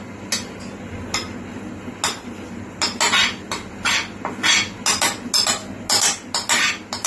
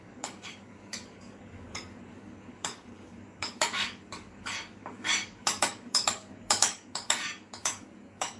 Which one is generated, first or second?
second